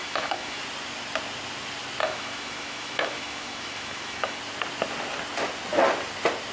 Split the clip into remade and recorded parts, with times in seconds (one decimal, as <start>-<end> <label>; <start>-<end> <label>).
0.0-0.6 remade; 0.6-2.0 recorded; 2.0-4.4 remade; 4.4-6.5 recorded